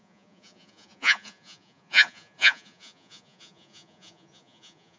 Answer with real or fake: fake